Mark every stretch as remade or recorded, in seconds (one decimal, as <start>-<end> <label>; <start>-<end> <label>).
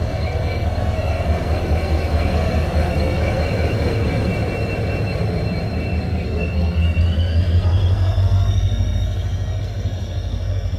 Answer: 0.0-4.3 remade; 4.3-6.0 recorded; 6.0-10.8 remade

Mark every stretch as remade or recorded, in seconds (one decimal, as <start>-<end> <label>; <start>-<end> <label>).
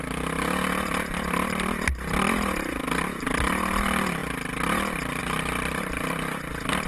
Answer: 0.0-6.9 recorded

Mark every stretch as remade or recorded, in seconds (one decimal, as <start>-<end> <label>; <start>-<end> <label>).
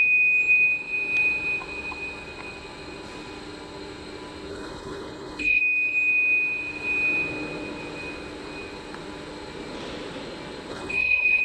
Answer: 0.0-4.5 recorded; 4.5-5.6 remade; 5.6-10.7 recorded; 10.7-11.4 remade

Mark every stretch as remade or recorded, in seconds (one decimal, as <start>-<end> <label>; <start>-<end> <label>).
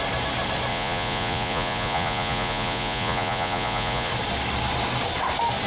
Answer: 0.0-0.7 recorded; 0.7-4.1 remade; 4.1-5.7 recorded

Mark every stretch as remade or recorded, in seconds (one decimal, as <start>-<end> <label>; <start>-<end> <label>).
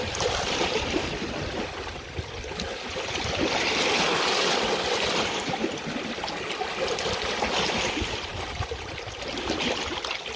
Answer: 0.0-10.4 recorded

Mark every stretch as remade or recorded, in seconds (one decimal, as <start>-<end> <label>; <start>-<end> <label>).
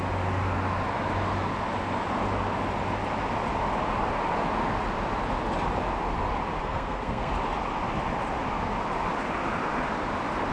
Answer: 0.0-6.6 recorded; 6.6-7.3 remade; 7.3-10.5 recorded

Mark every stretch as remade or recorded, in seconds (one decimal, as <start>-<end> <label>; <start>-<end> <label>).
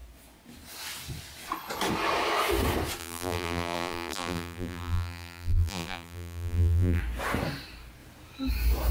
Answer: 0.0-3.0 recorded; 3.0-7.0 remade; 7.0-8.9 recorded